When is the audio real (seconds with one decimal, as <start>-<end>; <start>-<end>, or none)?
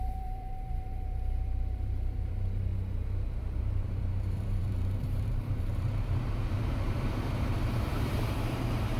2.7-3.6